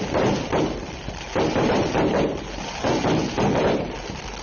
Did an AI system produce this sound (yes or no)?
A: no